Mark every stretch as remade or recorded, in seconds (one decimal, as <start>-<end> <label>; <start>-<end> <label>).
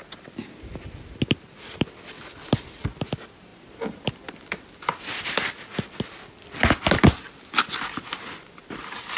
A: 0.0-9.2 recorded